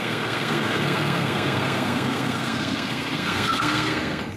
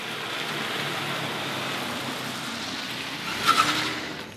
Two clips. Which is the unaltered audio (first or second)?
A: second